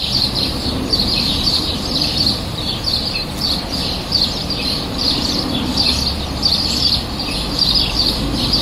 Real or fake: fake